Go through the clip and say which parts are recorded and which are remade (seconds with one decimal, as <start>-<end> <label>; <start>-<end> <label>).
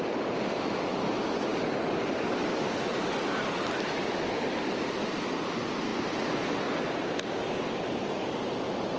0.0-9.0 recorded